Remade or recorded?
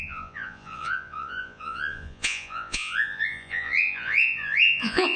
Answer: remade